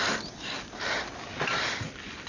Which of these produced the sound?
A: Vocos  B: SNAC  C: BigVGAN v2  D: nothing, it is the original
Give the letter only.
D